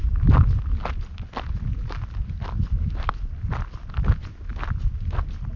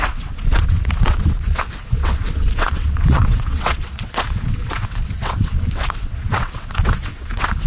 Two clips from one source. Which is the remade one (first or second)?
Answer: second